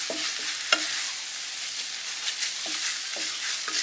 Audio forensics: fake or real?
real